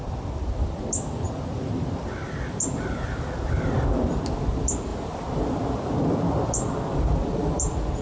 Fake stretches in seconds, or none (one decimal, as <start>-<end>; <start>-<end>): 0.0-8.0